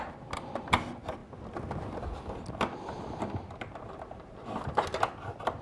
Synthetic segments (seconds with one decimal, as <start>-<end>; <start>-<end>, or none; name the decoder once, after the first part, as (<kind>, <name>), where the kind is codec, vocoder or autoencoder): none